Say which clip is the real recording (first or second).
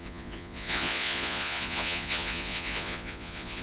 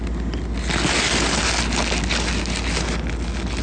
second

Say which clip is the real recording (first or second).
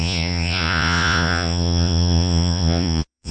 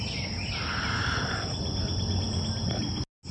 second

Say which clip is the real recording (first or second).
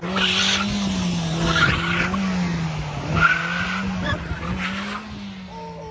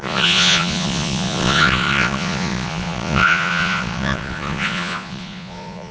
first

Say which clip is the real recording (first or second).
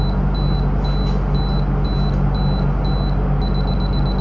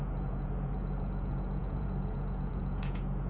first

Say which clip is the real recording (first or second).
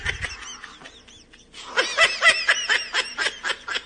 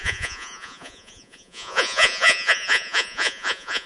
first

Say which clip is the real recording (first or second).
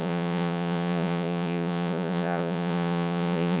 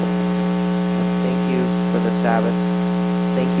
second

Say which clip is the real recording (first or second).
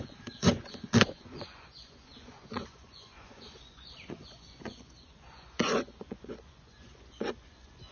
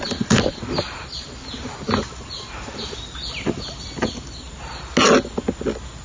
second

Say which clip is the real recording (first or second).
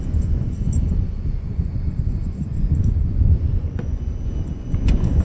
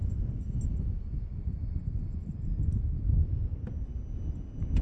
second